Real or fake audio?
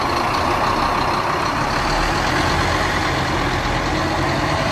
real